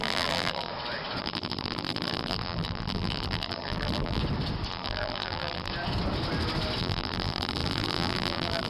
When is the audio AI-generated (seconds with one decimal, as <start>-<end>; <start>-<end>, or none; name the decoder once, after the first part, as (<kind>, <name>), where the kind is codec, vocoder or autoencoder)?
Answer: 0.0-0.7 (vocoder, BigVGAN v2); 1.2-4.2; 4.7-5.7; 6.8-8.7